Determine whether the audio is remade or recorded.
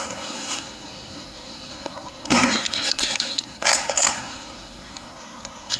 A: remade